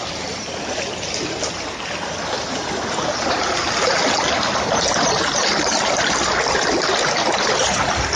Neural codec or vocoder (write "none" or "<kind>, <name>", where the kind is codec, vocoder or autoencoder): none